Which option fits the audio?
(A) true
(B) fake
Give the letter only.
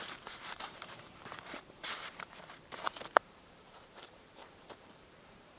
B